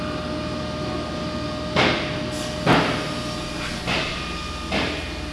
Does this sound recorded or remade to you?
recorded